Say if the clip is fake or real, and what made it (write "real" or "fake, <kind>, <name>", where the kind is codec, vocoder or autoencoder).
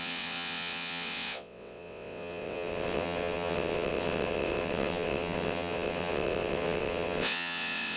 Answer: fake, vocoder, WaveNeXt